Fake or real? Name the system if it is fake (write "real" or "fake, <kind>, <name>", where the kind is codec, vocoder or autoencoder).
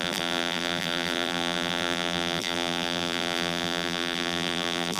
fake, vocoder, BigVGAN v2